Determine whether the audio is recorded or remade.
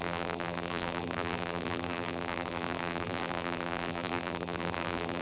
remade